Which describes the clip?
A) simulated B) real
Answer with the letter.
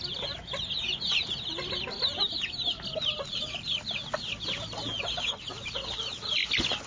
B